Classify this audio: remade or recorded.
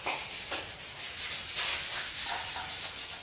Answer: recorded